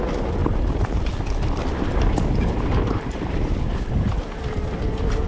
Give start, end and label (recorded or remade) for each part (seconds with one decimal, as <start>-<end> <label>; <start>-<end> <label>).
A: 0.0-0.4 recorded; 0.4-1.1 remade; 1.1-1.6 recorded; 1.6-3.9 remade; 3.9-5.3 recorded